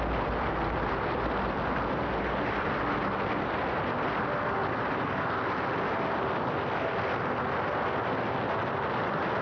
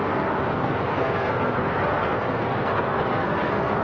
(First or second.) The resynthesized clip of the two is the second